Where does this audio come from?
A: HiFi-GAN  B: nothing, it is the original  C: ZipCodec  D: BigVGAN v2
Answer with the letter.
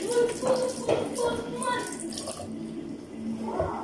B